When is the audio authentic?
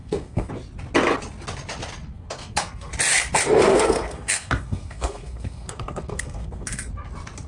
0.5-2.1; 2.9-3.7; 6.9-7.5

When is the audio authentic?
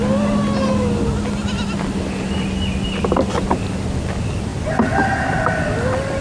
0.0-6.2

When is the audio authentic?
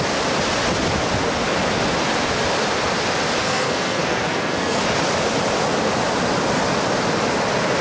0.0-3.4; 4.8-7.8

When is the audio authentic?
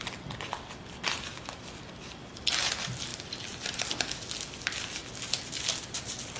0.0-6.4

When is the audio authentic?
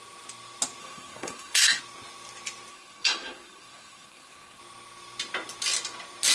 0.0-0.8; 1.8-2.7; 4.6-6.3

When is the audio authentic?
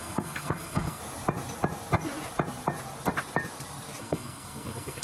1.0-4.0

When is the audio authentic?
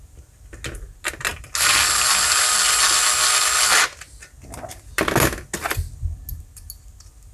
0.0-7.3